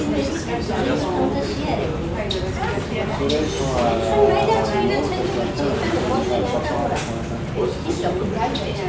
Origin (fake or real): real